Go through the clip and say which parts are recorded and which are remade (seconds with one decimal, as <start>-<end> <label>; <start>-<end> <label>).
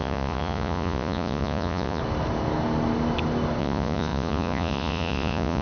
0.0-2.0 remade; 2.0-3.6 recorded; 3.6-5.6 remade